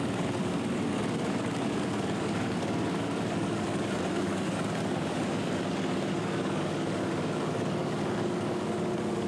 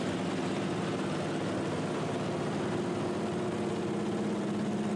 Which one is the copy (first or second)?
first